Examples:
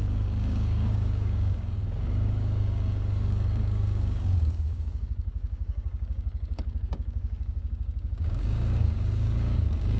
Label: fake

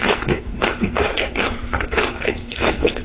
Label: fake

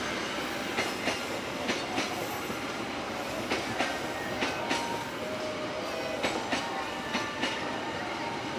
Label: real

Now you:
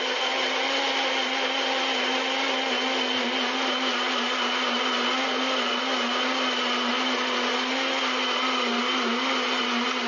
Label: real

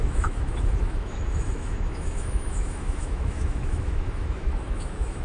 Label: fake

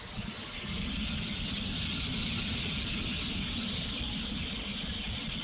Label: real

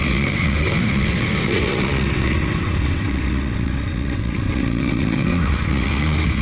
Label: fake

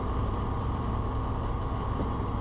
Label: fake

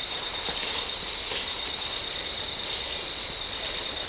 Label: real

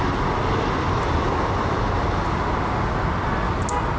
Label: real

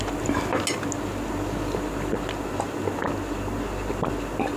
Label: real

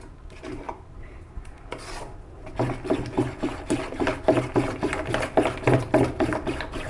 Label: real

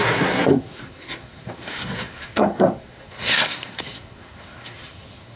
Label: fake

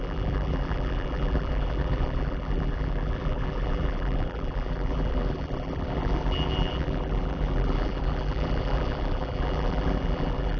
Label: fake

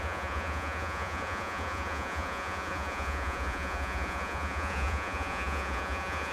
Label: fake